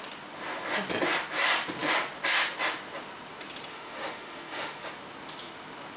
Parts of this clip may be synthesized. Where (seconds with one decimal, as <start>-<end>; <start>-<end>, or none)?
3.7-4.9